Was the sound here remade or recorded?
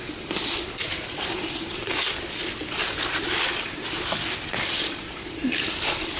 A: recorded